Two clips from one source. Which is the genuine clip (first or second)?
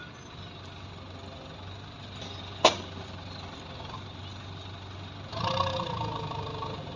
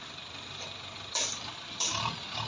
first